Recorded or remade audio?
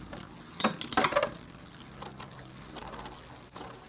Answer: recorded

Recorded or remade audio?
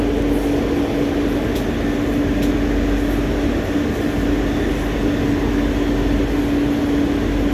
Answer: recorded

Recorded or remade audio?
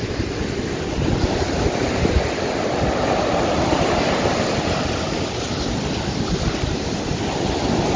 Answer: recorded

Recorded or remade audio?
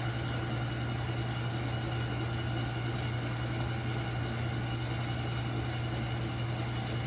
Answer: recorded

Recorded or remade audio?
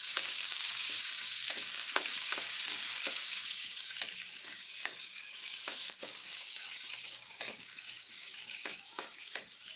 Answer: remade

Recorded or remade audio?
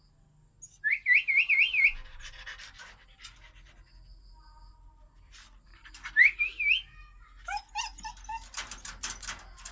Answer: recorded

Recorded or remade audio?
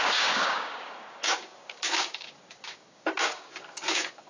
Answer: remade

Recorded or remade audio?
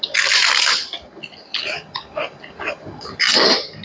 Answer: recorded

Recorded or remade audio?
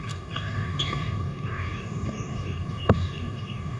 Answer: remade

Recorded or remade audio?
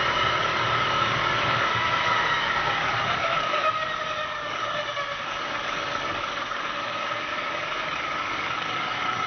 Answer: remade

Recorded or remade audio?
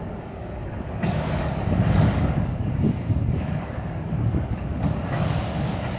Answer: remade